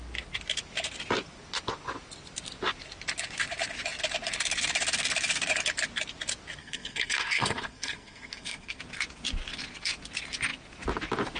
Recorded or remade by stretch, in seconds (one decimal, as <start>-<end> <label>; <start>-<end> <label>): 0.0-6.6 recorded; 6.6-8.8 remade; 8.8-11.4 recorded